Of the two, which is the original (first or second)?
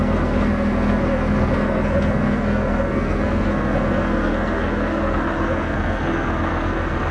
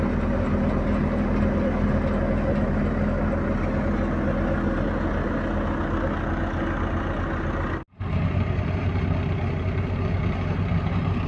second